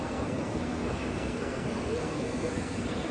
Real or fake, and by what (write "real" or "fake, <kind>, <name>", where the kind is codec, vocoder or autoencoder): fake, codec, SNAC